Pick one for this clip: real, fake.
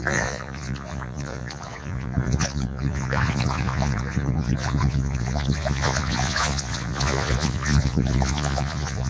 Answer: fake